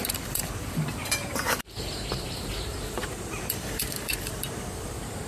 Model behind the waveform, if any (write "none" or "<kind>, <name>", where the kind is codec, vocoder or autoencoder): vocoder, BigVGAN v2